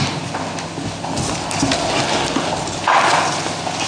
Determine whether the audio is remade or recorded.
recorded